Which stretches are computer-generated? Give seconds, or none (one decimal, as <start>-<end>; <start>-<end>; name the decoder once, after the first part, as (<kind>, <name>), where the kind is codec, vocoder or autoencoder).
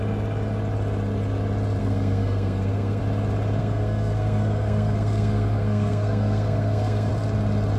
1.8-3.0 (codec, SNAC); 3.6-7.1